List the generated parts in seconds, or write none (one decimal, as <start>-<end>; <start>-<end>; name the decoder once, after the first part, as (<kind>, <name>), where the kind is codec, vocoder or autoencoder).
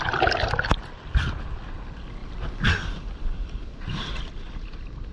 2.2-4.0 (vocoder, BigVGAN v2)